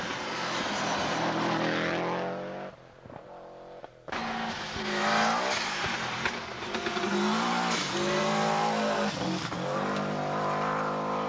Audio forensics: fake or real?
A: real